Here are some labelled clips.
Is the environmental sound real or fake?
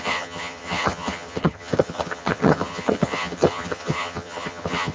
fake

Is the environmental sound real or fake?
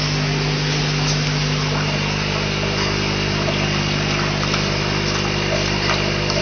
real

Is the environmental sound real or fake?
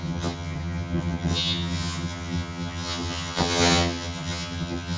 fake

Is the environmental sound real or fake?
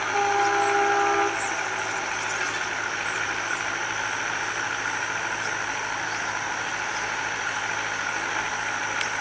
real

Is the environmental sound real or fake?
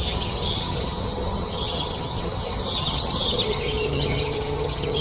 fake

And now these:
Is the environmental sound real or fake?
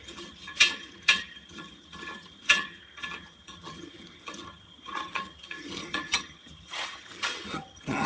fake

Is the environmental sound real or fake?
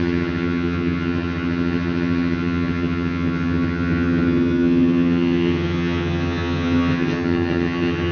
fake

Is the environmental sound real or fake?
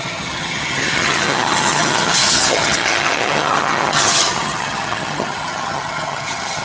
fake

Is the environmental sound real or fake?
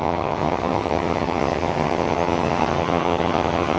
fake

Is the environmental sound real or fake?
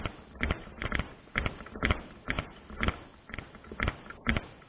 real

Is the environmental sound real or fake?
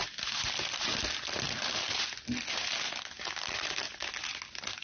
real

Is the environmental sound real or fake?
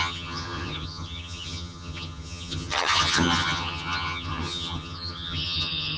fake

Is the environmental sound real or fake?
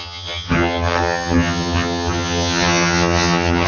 fake